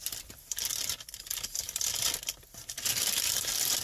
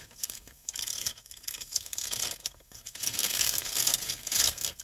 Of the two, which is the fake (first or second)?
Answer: second